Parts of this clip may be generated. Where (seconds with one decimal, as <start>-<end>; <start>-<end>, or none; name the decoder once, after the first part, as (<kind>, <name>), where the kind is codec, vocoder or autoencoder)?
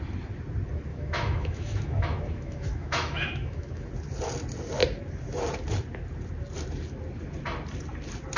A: 0.9-3.9 (autoencoder, DAC-VAE)